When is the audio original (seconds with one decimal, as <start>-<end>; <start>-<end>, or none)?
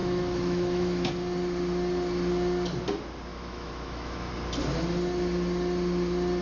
1.1-3.3; 4.3-6.4